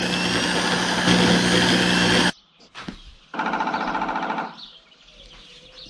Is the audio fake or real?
real